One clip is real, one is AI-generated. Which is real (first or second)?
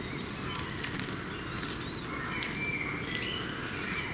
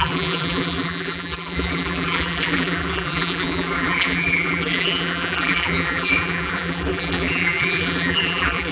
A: first